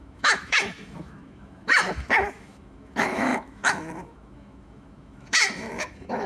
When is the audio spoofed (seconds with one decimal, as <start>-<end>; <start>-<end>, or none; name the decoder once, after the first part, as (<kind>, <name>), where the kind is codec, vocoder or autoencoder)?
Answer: 0.0-6.3 (autoencoder, DAC-VAE)